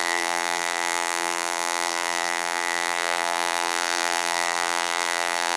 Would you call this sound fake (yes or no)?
yes